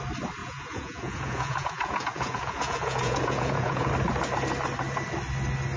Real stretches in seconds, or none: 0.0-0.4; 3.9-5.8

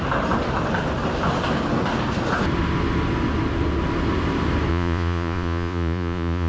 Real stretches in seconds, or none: 0.0-4.7

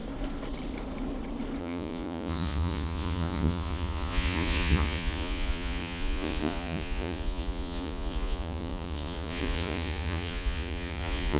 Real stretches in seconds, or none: 0.0-1.6

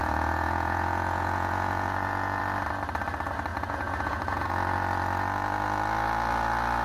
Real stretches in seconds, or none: 2.4-3.5; 4.5-6.8

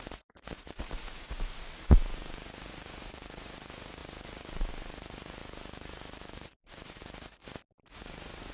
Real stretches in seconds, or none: 7.4-7.9

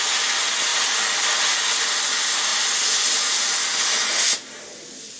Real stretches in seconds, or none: 0.0-5.2

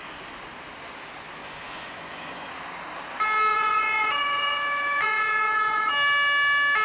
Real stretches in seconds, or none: 0.0-1.4; 2.5-3.5; 5.9-6.8

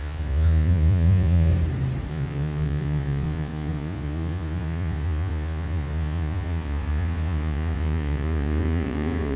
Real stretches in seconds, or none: 1.5-2.1